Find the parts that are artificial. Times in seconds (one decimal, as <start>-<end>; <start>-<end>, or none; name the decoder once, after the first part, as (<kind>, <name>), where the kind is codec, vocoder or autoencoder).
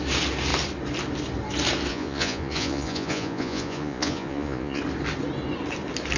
1.9-4.8 (vocoder, Vocos)